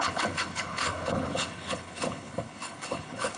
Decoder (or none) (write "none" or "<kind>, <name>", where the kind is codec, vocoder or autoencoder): codec, HILCodec